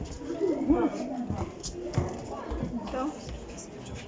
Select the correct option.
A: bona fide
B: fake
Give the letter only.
A